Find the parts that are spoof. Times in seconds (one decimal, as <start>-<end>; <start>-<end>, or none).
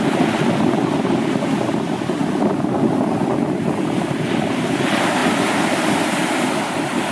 none